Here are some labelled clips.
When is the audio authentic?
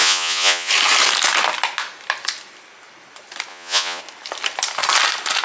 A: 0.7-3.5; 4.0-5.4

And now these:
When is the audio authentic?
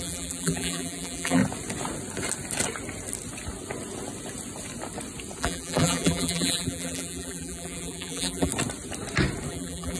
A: 1.4-5.4; 8.5-9.5